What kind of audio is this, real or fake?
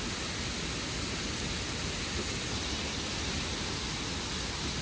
real